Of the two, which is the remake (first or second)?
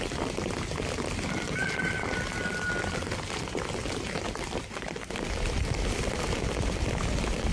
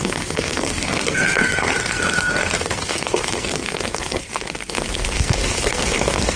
second